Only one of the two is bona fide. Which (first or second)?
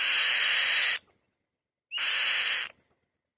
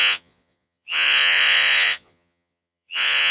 first